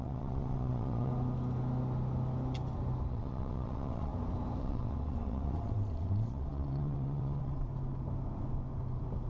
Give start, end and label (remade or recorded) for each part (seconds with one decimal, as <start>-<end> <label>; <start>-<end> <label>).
0.0-1.1 remade; 1.1-3.1 recorded; 3.1-4.1 remade; 4.1-4.6 recorded; 4.6-7.7 remade; 7.7-9.3 recorded